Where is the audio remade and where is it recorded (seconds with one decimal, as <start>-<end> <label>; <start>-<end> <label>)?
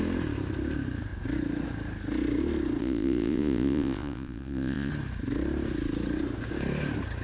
0.0-2.8 recorded; 2.8-4.9 remade; 4.9-7.2 recorded